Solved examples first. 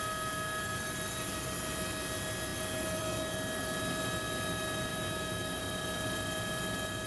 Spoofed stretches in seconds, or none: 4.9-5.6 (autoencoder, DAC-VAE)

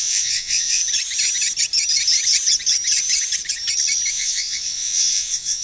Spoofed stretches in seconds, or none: 0.0-0.8 (vocoder, WaveNeXt); 4.1-5.6

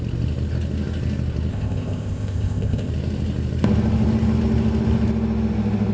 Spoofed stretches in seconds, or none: 1.5-2.9 (codec, ZipCodec)

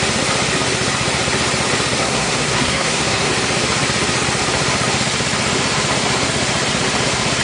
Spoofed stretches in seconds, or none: 2.0-3.3 (codec, SNAC)

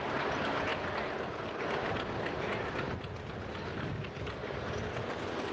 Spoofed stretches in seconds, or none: none

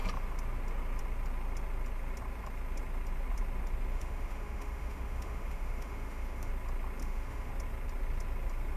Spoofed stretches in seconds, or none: 3.9-6.5 (autoencoder, DAC-VAE); 7.0-7.5

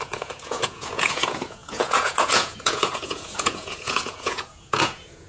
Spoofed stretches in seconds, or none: 0.0-5.3 (vocoder, Vocos)

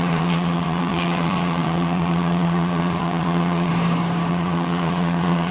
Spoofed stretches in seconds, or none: 0.0-3.7 (vocoder, Vocos); 4.3-5.5